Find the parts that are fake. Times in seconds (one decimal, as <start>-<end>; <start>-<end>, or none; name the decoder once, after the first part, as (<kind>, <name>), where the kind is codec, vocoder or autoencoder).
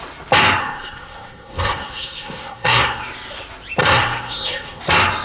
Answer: 0.6-3.0 (codec, SNAC); 3.8-4.8